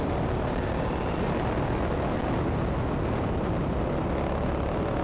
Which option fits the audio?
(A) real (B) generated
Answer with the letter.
A